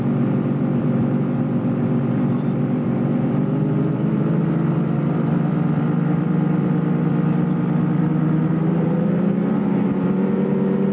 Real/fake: fake